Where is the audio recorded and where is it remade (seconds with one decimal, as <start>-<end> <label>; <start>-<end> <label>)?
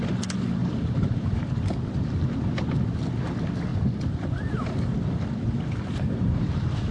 0.0-0.6 recorded; 0.6-1.4 remade; 1.4-3.7 recorded; 3.7-6.5 remade; 6.5-6.9 recorded